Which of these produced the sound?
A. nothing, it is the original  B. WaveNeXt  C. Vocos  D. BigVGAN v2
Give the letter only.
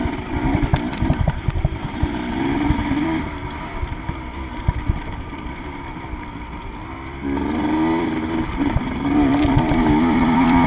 D